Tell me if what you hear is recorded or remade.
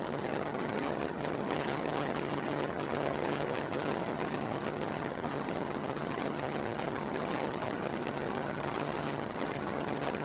remade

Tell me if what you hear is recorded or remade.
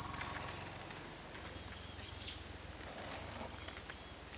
recorded